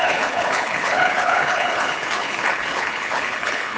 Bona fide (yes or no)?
no